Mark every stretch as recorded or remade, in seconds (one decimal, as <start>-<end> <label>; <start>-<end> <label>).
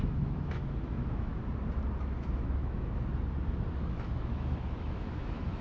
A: 0.0-1.3 remade; 1.3-2.0 recorded; 2.0-3.1 remade; 3.1-3.7 recorded; 3.7-5.6 remade